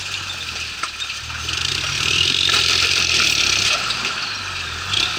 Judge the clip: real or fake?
real